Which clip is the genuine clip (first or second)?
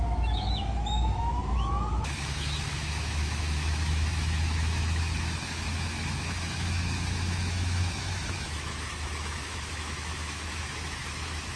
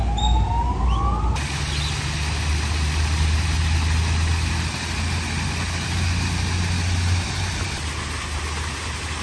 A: second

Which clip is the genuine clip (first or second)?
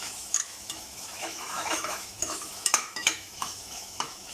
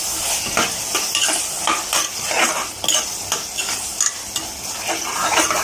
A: second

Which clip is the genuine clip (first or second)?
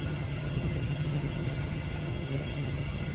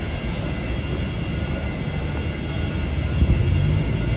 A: second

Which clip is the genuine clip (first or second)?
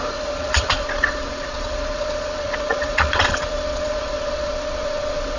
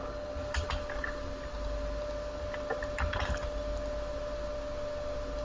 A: second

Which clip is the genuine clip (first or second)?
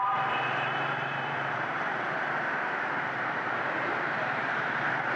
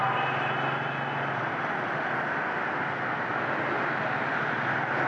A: second